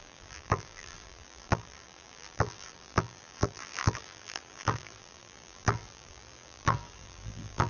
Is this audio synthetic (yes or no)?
yes